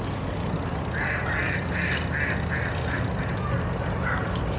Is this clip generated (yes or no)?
no